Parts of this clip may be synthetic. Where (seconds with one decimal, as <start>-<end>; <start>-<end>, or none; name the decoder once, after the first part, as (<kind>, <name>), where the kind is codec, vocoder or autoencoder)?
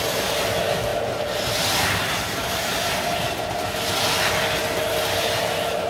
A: 0.9-3.8 (vocoder, BigVGAN v2)